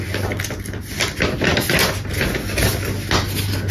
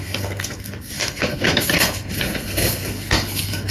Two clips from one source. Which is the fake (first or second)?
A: second